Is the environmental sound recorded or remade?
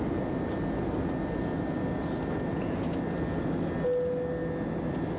recorded